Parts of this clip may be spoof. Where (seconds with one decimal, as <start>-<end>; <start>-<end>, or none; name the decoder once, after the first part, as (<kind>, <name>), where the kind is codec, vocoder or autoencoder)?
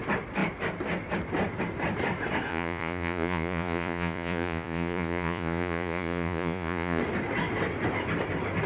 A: 2.5-7.0 (vocoder, Vocos)